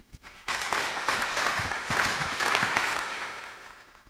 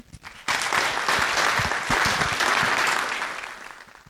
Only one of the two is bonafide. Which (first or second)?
second